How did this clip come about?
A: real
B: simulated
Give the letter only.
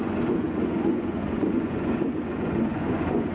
B